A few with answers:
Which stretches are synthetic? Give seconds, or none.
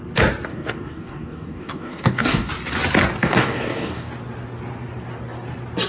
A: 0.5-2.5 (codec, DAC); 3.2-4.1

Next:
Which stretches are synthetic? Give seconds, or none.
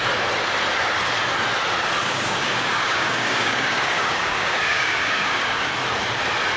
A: 2.0-5.7 (codec, DAC)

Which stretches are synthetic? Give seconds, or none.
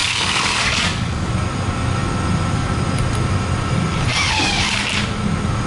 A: 0.0-1.3 (codec, DAC); 4.1-4.8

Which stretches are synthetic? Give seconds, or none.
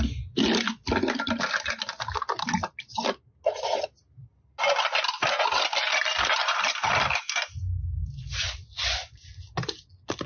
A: none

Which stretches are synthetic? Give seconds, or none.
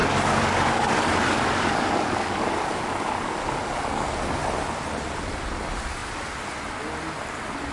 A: 0.0-4.4 (codec, DAC)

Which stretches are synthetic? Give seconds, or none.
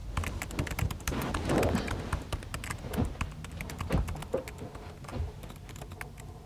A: none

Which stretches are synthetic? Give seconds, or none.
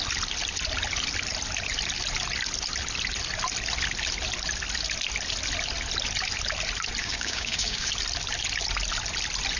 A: 7.0-7.9 (codec, DAC)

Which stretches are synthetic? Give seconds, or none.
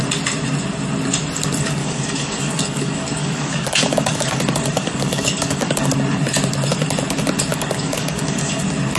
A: 1.8-5.9 (codec, DAC); 7.5-8.6